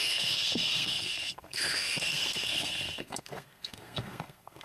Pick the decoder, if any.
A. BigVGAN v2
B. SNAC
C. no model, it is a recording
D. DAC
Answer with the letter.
B